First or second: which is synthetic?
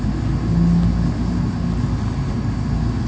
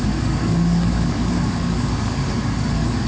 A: second